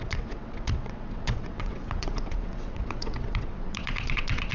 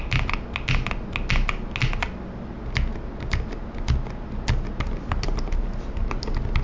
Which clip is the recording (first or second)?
second